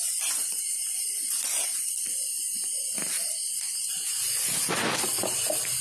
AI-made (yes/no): yes